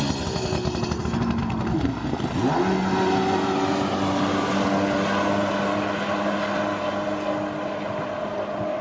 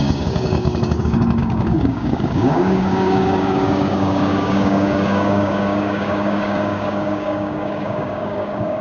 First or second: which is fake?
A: second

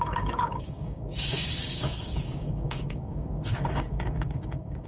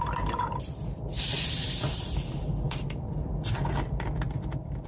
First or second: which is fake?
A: first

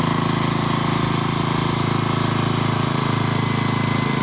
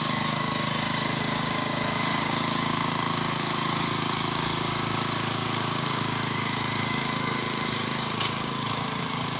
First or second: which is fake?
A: second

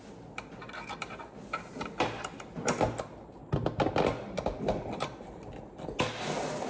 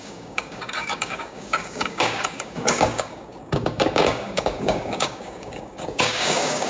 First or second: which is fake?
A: second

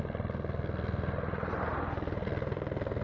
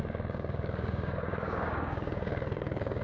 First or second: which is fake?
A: second